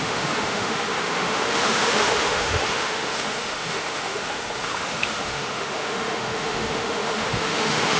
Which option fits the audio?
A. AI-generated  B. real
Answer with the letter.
A